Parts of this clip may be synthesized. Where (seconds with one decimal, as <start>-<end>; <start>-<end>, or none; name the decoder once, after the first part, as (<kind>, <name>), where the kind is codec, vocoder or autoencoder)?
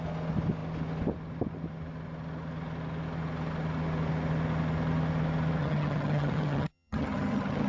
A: 5.6-7.7 (vocoder, HiFi-GAN)